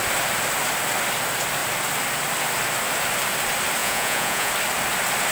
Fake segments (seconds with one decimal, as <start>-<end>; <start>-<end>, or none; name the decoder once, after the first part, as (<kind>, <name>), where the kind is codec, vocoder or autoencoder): 3.8-4.5 (vocoder, Vocos)